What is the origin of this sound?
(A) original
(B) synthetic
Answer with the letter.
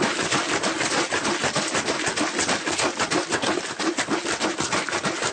A